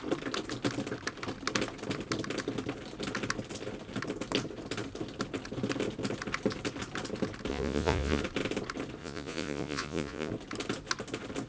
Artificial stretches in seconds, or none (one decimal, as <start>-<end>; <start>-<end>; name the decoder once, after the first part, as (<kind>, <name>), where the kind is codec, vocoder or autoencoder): 7.5-8.2 (vocoder, Vocos); 9.0-10.3